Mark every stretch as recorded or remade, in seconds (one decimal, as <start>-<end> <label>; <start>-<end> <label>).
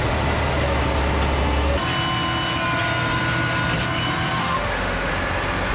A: 0.0-4.4 recorded; 4.4-5.1 remade; 5.1-5.7 recorded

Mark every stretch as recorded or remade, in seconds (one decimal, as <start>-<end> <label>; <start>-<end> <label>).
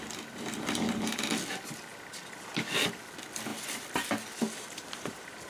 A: 0.0-5.5 recorded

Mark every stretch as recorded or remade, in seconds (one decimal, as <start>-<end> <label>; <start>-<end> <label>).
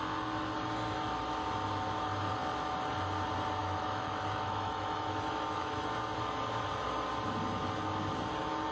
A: 0.0-3.6 recorded; 3.6-5.8 remade; 5.8-8.7 recorded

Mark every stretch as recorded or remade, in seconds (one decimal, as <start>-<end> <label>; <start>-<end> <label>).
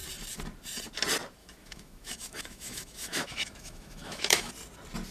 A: 0.0-1.4 recorded; 1.4-4.5 remade; 4.5-5.1 recorded